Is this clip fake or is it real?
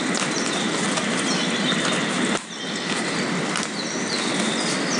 real